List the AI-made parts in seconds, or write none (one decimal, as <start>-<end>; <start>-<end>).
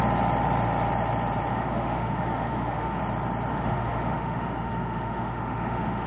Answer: 1.5-3.0; 3.5-6.1